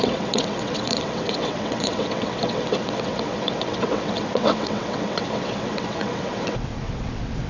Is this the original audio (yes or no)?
no